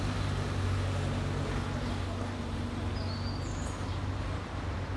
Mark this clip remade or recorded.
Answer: recorded